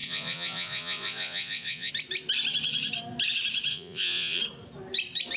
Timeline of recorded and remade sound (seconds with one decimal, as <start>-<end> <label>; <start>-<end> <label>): 0.0-1.9 remade; 1.9-3.7 recorded; 3.7-4.4 remade; 4.4-5.4 recorded